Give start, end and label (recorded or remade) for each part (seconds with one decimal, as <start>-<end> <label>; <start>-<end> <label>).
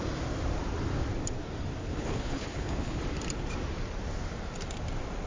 0.0-1.8 recorded; 1.8-3.0 remade; 3.0-5.3 recorded